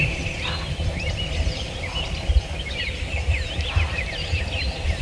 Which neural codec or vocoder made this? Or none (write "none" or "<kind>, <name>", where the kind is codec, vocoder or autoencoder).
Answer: vocoder, BigVGAN v2